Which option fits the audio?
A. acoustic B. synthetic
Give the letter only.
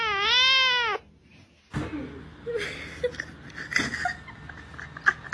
A